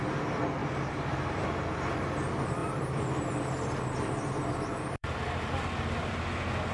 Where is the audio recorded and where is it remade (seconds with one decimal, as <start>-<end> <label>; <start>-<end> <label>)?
0.0-0.6 recorded; 0.6-1.7 remade; 1.7-2.6 recorded; 2.6-6.2 remade; 6.2-6.7 recorded